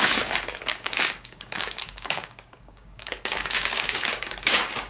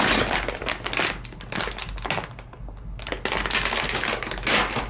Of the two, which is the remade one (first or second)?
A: first